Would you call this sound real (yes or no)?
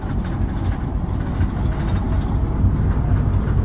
yes